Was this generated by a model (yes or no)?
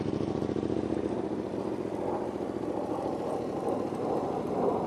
no